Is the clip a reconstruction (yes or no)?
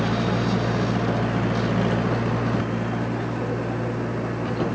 no